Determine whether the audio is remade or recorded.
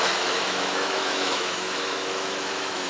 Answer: remade